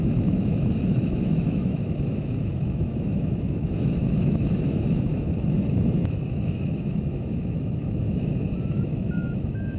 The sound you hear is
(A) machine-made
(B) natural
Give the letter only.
A